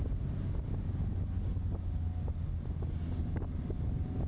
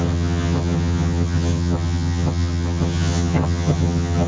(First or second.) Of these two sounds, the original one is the first